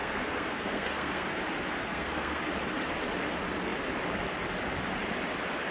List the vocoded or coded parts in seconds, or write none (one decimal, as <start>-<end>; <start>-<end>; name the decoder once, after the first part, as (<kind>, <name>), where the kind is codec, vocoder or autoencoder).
0.0-1.4 (codec, SNAC); 1.8-2.4